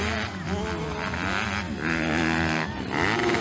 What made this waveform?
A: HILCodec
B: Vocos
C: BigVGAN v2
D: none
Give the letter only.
D